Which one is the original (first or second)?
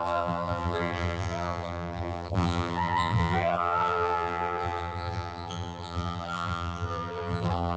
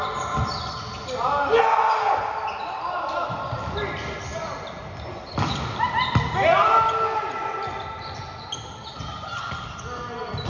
second